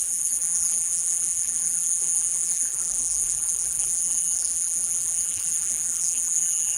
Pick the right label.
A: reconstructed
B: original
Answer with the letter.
A